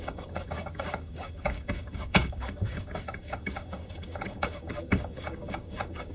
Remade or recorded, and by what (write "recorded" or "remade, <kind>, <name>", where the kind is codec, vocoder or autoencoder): remade, codec, DAC